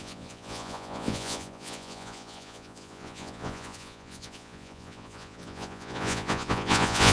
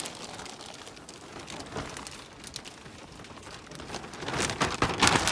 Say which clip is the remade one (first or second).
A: first